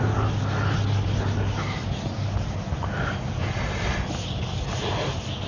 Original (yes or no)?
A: yes